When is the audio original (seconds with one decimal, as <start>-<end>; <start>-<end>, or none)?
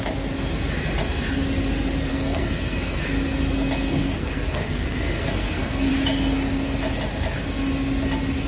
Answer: 0.0-2.1; 3.0-4.0; 5.9-8.5